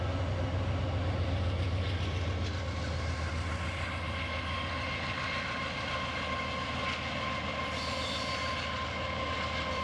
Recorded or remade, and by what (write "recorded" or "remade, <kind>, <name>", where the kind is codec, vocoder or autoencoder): recorded